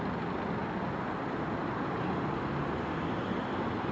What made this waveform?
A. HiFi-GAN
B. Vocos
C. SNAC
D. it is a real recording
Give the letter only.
D